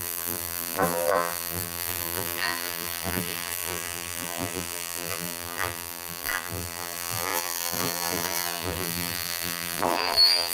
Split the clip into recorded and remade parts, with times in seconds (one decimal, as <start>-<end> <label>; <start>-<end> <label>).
0.0-10.5 remade